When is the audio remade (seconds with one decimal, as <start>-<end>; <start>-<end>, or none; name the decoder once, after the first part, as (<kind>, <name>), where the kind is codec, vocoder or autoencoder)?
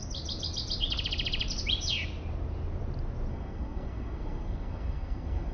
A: 3.3-5.5 (codec, SNAC)